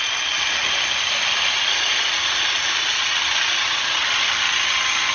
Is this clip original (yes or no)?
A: yes